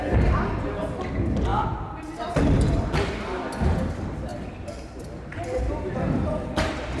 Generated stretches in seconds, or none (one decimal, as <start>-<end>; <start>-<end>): 4.3-7.0